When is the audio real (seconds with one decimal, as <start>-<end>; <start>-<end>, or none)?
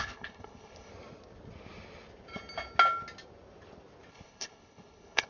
0.9-4.1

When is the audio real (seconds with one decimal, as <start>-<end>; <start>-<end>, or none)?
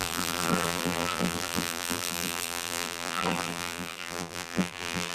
none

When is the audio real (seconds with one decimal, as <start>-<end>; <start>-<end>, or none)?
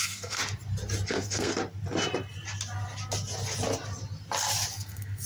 0.4-1.1; 1.5-4.7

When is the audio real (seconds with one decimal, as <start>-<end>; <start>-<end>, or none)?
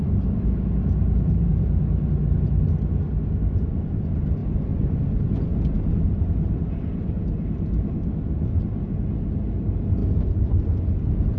0.0-11.4